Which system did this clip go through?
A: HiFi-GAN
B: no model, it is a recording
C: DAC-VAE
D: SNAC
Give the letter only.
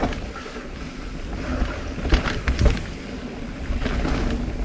B